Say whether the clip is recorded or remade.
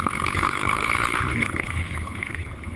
remade